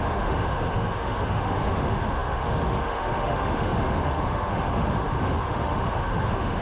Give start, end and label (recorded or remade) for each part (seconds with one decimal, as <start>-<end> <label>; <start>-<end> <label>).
0.0-6.6 remade